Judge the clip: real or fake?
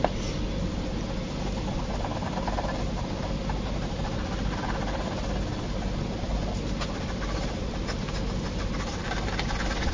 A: real